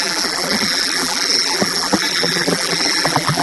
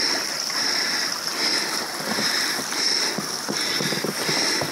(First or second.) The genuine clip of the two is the second